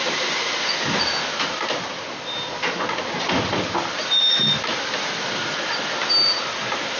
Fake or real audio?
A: real